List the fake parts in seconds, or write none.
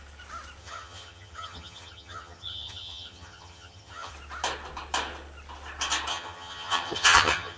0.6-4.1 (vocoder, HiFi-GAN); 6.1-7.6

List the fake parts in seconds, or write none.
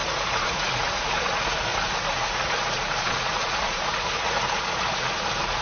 0.0-5.6 (vocoder, Vocos)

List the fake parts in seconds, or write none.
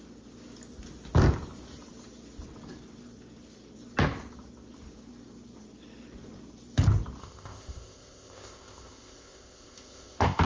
7.2-10.4 (codec, ZipCodec)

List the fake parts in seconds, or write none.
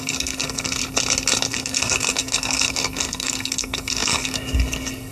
0.0-0.8 (codec, SNAC); 1.5-5.1